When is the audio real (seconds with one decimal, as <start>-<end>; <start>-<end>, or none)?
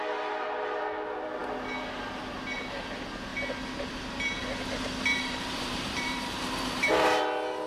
0.0-5.1; 7.2-7.7